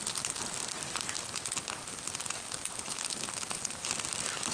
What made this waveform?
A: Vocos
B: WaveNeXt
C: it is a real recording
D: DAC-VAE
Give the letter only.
C